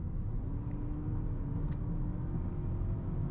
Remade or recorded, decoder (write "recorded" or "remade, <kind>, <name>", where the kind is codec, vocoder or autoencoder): recorded